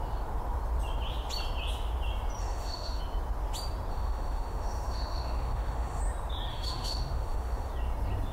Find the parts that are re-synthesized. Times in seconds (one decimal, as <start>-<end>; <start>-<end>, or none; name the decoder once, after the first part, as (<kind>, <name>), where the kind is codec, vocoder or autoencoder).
2.4-3.0 (autoencoder, DAC-VAE); 3.9-6.0; 6.5-7.7